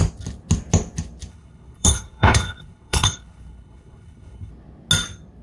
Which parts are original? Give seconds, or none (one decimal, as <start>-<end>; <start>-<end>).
0.0-1.3; 4.5-5.4